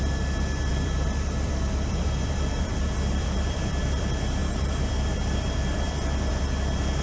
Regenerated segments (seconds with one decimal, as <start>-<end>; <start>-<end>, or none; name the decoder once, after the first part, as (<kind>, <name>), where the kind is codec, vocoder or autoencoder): 0.7-3.8 (vocoder, BigVGAN v2); 4.4-6.3